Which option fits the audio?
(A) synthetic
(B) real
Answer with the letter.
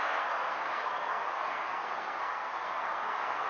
A